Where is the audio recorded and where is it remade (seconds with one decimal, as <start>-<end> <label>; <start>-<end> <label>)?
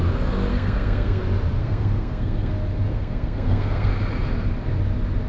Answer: 0.0-0.5 recorded; 0.5-1.2 remade; 1.2-1.6 recorded; 1.6-2.5 remade; 2.5-2.9 recorded; 2.9-3.9 remade; 3.9-5.3 recorded